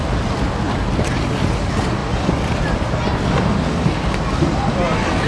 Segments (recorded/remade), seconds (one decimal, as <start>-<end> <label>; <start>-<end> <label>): 0.0-5.3 recorded

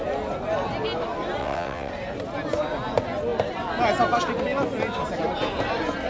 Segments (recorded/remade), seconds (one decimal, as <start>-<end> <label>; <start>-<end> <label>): 0.0-1.4 recorded; 1.4-1.9 remade; 1.9-6.1 recorded